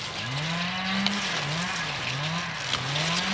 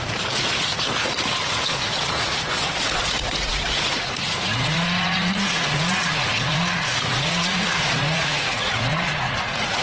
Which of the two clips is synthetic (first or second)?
second